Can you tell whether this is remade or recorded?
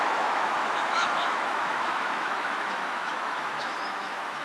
remade